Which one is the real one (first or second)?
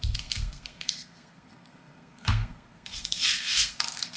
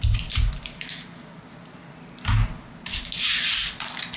second